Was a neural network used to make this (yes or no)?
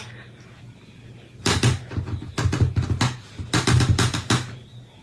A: no